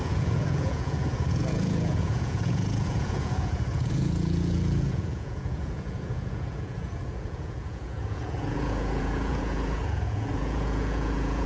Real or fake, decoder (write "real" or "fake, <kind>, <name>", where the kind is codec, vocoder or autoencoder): fake, vocoder, Vocos